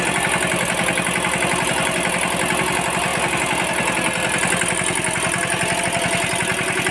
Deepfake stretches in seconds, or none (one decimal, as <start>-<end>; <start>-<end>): none